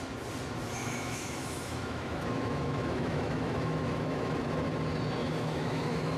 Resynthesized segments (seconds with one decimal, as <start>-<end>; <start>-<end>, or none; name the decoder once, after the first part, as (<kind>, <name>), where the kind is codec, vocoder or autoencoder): 0.8-4.5 (autoencoder, DAC-VAE); 5.2-6.2